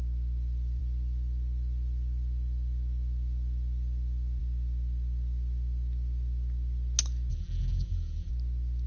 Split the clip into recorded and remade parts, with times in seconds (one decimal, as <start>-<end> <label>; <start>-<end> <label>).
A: 0.0-7.3 recorded; 7.3-8.3 remade; 8.3-8.9 recorded